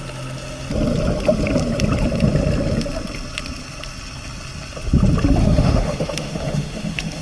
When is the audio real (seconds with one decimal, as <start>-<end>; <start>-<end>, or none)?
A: 0.0-5.4